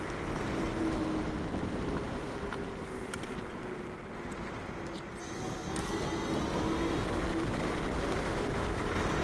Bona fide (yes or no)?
yes